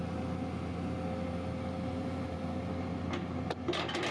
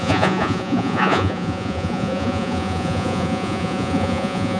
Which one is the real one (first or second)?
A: first